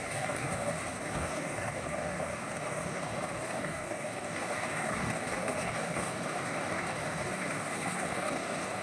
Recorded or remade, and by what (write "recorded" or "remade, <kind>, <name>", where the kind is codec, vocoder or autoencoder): remade, codec, DAC